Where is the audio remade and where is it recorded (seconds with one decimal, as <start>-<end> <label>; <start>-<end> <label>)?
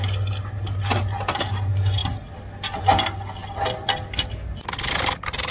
0.0-5.5 recorded